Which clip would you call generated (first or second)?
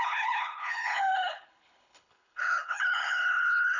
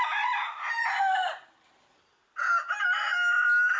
first